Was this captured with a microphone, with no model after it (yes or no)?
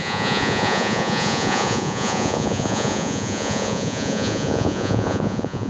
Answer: no